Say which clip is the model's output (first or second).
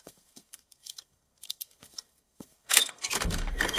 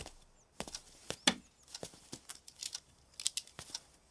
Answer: first